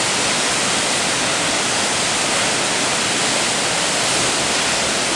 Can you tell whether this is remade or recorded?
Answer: recorded